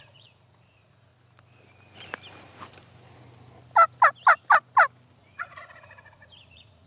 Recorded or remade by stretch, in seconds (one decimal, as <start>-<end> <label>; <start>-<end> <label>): 0.0-1.1 remade; 1.1-5.2 recorded; 5.2-6.9 remade